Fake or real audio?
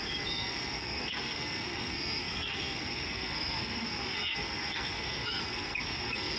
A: fake